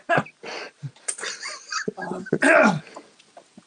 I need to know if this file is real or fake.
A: real